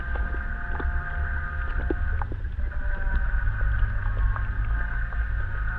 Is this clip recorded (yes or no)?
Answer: yes